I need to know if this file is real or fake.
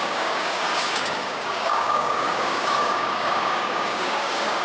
fake